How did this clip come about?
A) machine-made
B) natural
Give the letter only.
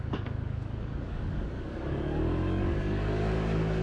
A